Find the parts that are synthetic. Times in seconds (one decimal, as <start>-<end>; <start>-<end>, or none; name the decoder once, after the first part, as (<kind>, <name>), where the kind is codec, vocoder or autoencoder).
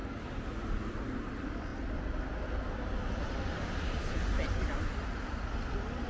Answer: none